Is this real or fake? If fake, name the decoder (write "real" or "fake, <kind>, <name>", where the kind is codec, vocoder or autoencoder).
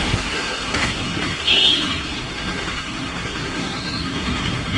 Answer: fake, codec, SNAC